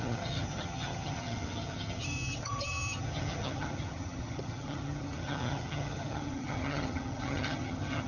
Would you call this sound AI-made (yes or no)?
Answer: yes